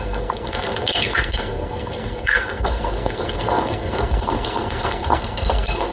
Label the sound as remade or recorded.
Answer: remade